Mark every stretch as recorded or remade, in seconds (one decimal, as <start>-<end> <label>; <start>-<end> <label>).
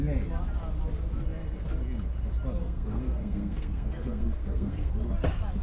0.0-2.6 recorded; 2.6-4.9 remade; 4.9-5.6 recorded